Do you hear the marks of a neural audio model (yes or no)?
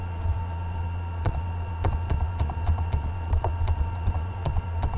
yes